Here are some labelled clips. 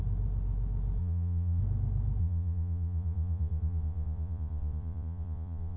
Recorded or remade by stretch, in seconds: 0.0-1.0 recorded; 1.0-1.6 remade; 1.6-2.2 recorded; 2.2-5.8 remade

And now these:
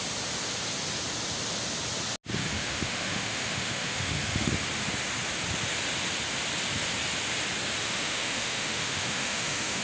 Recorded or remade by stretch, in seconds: 0.0-2.4 recorded; 2.4-4.5 remade; 4.5-7.8 recorded; 7.8-9.8 remade

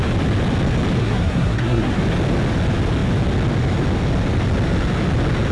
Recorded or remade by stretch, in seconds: 0.0-1.0 recorded; 1.0-2.0 remade; 2.0-5.5 recorded

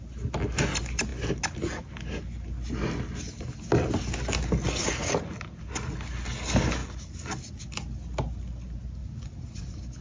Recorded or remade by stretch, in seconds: 0.0-10.0 recorded

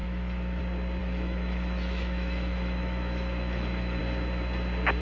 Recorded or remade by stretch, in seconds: 0.0-0.6 remade; 0.6-1.0 recorded; 1.0-4.0 remade; 4.0-5.0 recorded

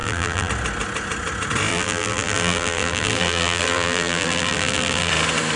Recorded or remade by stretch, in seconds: 0.0-0.5 remade; 0.5-1.7 recorded; 1.7-5.1 remade; 5.1-5.6 recorded

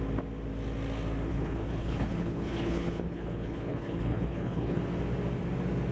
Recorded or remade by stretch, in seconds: 0.0-1.3 recorded; 1.3-4.8 remade; 4.8-5.9 recorded

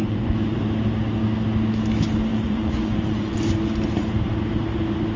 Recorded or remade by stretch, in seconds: 0.0-0.6 remade; 0.6-2.3 recorded; 2.3-3.4 remade; 3.4-5.2 recorded